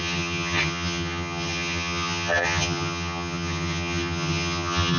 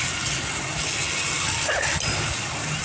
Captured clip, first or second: second